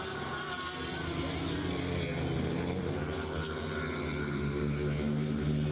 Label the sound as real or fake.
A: real